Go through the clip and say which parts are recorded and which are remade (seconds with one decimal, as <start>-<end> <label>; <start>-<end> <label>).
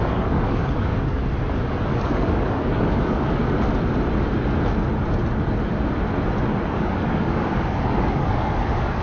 0.0-1.2 remade; 1.2-1.7 recorded; 1.7-3.4 remade; 3.4-6.6 recorded; 6.6-9.0 remade